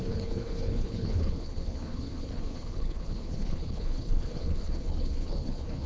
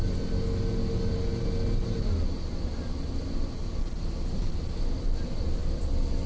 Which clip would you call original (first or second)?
second